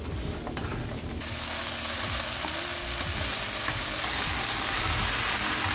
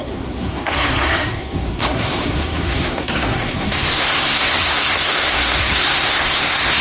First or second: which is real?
first